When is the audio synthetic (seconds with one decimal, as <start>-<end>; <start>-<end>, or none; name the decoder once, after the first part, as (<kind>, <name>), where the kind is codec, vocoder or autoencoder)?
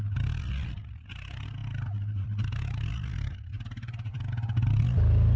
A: none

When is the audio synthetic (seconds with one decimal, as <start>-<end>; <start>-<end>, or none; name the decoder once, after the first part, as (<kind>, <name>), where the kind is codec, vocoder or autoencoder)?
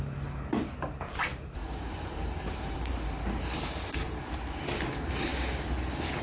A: 1.6-4.2 (vocoder, BigVGAN v2)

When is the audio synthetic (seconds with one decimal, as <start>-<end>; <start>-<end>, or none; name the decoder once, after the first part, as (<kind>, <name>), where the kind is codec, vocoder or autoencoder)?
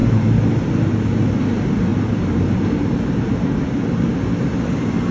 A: 1.9-5.1 (vocoder, BigVGAN v2)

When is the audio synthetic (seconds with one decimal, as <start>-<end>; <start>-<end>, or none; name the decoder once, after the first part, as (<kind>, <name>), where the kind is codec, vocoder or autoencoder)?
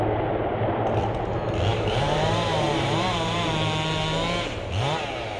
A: 1.7-3.5 (vocoder, BigVGAN v2)